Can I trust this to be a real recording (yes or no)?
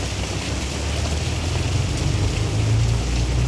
yes